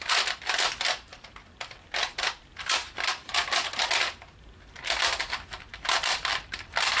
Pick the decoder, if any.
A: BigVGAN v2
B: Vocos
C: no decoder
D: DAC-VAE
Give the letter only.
A